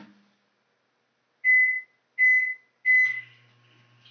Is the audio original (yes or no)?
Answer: yes